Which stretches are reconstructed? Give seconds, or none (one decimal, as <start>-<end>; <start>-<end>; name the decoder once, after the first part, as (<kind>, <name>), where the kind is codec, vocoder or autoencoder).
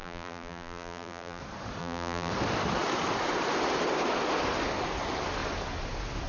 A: 0.0-1.4 (vocoder, BigVGAN v2); 1.8-2.3